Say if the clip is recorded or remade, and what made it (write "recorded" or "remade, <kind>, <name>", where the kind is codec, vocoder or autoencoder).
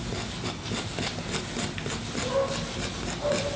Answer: recorded